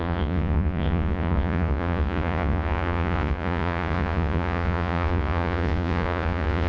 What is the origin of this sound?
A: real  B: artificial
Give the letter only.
B